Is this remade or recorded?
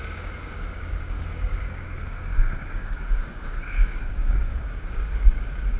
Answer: remade